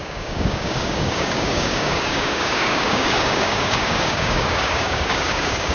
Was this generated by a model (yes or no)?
yes